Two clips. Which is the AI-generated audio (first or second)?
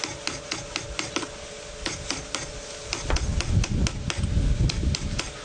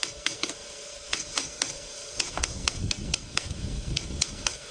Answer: second